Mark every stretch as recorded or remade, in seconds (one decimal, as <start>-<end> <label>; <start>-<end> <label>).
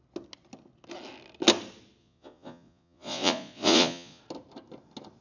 0.0-2.0 recorded; 2.0-4.2 remade; 4.2-5.2 recorded